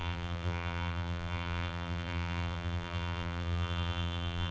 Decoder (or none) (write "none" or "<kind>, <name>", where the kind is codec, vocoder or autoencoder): vocoder, BigVGAN v2